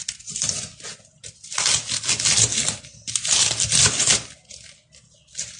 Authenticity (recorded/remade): recorded